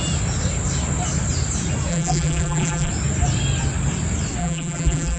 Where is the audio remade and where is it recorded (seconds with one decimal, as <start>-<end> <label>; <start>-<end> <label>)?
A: 0.0-1.9 recorded; 1.9-2.9 remade; 2.9-4.4 recorded; 4.4-5.2 remade